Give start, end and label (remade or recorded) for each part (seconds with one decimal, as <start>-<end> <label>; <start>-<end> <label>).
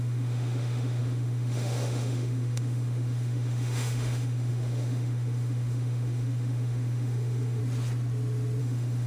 0.0-7.6 remade; 7.6-8.6 recorded; 8.6-9.1 remade